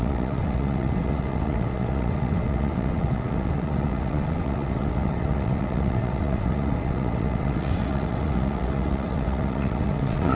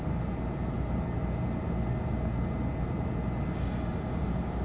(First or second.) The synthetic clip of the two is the first